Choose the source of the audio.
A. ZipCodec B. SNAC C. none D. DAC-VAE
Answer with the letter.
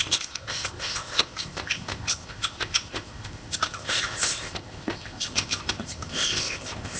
A